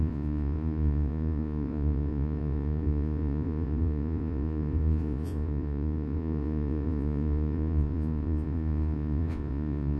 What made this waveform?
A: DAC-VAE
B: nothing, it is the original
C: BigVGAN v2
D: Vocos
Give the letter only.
D